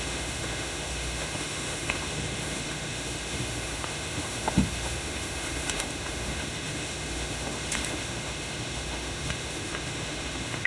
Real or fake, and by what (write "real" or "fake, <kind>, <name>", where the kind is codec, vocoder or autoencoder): fake, autoencoder, DAC-VAE